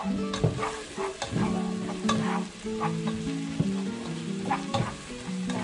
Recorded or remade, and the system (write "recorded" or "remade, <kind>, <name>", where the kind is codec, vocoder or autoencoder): recorded